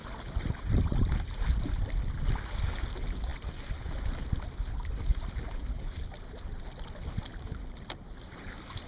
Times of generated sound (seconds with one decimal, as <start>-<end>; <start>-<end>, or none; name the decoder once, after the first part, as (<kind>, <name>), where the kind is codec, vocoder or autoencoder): 0.0-0.8 (vocoder, BigVGAN v2)